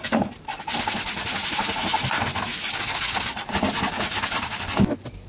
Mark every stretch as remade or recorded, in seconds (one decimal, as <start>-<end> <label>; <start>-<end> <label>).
0.0-5.3 recorded